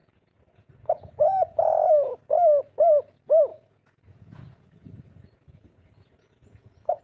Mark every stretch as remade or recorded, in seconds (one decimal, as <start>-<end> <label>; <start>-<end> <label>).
0.0-1.9 remade; 1.9-3.5 recorded; 3.5-7.0 remade